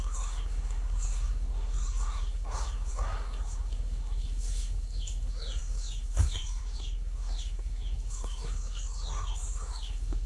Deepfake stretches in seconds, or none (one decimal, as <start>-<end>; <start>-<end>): 0.0-10.3